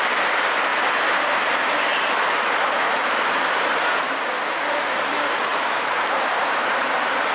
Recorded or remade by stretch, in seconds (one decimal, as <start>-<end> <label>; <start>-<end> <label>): 0.0-5.5 recorded; 5.5-7.3 remade

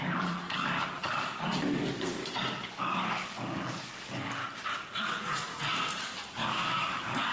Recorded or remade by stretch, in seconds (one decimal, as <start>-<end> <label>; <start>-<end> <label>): 0.0-2.2 remade; 2.2-2.7 recorded; 2.7-4.4 remade; 4.4-5.1 recorded; 5.1-5.5 remade; 5.5-6.0 recorded; 6.0-7.3 remade

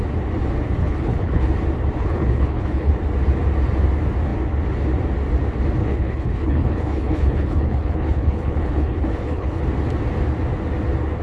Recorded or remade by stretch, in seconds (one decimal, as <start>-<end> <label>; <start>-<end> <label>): 0.0-0.8 recorded; 0.8-1.5 remade; 1.5-2.0 recorded; 2.0-2.9 remade; 2.9-5.8 recorded; 5.8-9.6 remade; 9.6-11.2 recorded

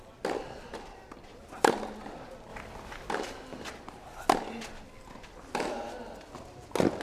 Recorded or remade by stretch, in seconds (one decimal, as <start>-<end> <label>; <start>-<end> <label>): 0.0-7.0 recorded

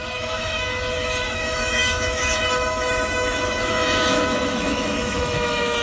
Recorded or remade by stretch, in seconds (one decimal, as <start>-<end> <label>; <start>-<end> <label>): 0.0-0.7 remade; 0.7-1.2 recorded; 1.2-5.8 remade

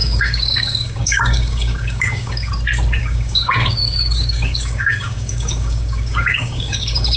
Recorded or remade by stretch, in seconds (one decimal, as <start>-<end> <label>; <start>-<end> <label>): 0.0-2.5 remade; 2.5-3.0 recorded; 3.0-7.2 remade

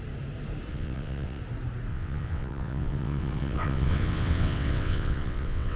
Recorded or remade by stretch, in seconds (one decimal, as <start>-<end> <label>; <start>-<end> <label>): 0.0-0.7 recorded; 0.7-1.4 remade; 1.4-1.9 recorded; 1.9-5.8 remade